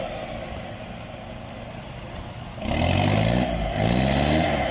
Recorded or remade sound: recorded